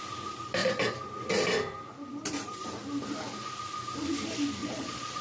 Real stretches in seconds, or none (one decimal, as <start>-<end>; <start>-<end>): 0.0-4.6